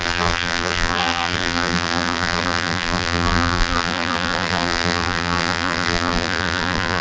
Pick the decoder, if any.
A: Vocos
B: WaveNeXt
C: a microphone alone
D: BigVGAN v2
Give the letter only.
D